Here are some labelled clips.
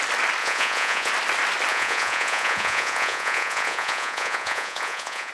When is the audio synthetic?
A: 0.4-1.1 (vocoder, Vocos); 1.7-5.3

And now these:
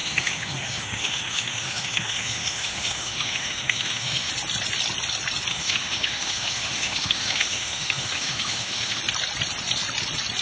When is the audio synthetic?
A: 0.0-4.3 (autoencoder, DAC-VAE); 5.5-9.0

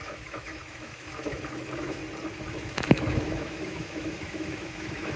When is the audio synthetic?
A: 0.0-2.0 (autoencoder, DAC-VAE); 2.5-5.2

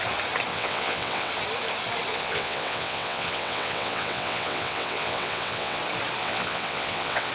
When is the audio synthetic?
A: 0.5-1.3 (vocoder, WaveNeXt); 2.1-5.8; 6.2-7.3

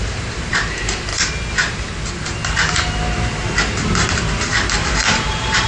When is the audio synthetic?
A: 0.0-1.1 (vocoder, BigVGAN v2); 4.1-5.7